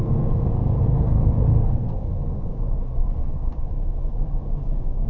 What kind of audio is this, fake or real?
fake